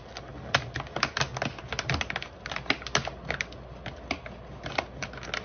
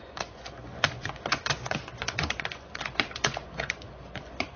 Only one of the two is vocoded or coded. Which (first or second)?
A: second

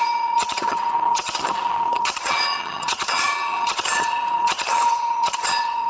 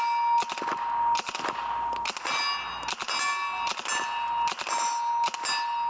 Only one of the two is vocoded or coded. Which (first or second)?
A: first